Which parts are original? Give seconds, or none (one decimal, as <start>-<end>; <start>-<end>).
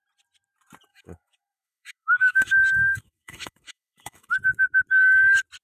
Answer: 0.0-0.9; 4.3-5.6